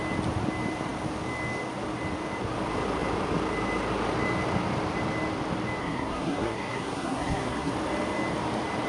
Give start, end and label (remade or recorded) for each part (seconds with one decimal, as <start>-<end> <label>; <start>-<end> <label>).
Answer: 0.0-5.8 recorded; 5.8-7.7 remade; 7.7-8.9 recorded